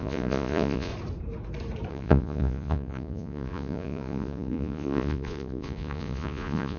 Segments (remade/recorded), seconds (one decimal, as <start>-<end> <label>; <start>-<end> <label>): 0.0-0.9 remade; 0.9-1.9 recorded; 1.9-6.8 remade